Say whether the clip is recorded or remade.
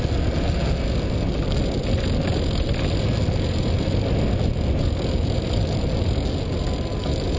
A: recorded